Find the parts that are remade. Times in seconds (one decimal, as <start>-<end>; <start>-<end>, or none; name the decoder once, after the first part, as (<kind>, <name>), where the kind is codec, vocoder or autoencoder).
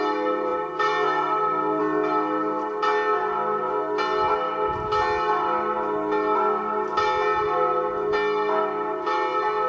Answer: none